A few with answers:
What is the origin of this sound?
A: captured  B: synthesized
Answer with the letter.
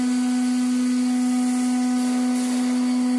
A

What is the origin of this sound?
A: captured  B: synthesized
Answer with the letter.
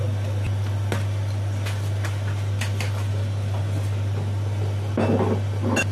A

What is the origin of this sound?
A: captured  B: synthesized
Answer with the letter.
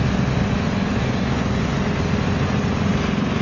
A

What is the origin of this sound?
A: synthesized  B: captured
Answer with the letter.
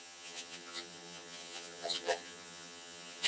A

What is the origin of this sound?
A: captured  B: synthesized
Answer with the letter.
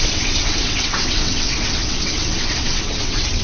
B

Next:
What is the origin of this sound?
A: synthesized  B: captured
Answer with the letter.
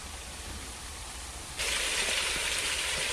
A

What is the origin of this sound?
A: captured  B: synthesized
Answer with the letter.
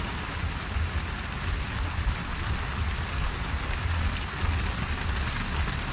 A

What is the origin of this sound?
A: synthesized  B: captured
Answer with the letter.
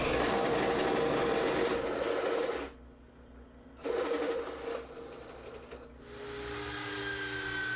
B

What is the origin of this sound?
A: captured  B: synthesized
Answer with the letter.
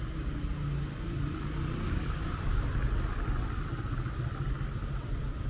A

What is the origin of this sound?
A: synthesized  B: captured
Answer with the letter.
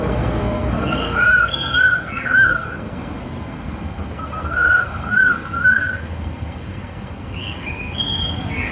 A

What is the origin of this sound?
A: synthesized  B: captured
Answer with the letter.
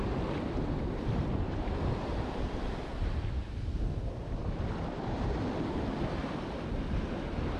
B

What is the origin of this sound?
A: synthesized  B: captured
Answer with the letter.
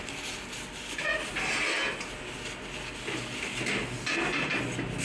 B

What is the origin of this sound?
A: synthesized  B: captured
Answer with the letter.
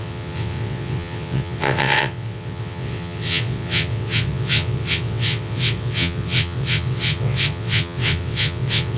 A